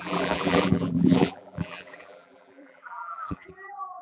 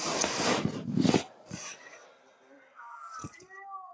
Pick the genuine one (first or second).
second